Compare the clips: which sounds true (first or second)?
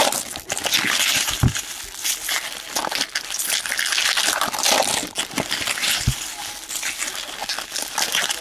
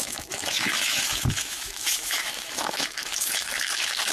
first